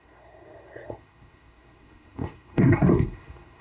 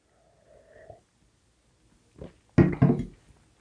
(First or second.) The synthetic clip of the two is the first